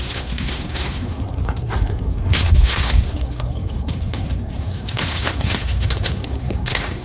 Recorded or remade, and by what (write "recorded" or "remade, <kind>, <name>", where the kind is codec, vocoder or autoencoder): remade, codec, SNAC